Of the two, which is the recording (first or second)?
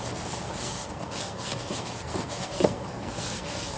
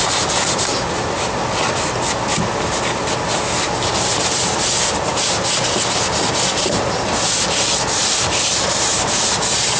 second